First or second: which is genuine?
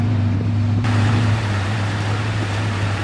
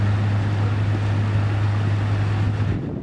second